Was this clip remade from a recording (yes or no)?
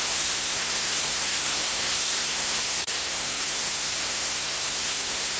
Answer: yes